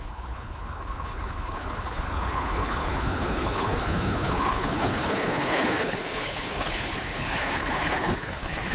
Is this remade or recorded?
remade